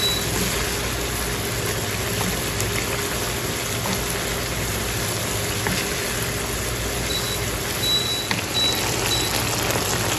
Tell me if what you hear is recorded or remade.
recorded